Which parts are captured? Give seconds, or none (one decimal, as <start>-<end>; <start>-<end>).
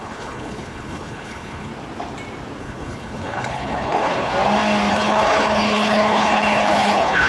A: 1.7-2.6; 4.3-4.9